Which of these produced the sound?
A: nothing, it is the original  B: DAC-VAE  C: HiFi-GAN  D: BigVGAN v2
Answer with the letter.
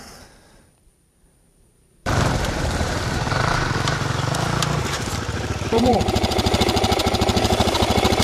D